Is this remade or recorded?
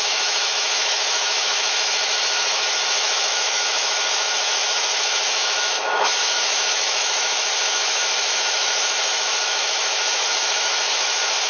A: remade